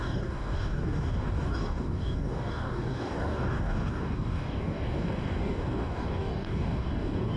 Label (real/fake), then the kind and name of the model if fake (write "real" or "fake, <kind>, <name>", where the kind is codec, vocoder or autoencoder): fake, codec, DAC